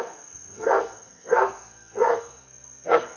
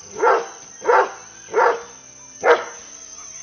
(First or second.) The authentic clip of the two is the second